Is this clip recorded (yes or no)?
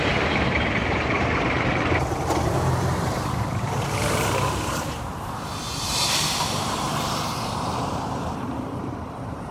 no